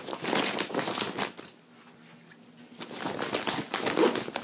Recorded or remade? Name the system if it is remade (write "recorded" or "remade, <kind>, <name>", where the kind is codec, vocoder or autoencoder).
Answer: recorded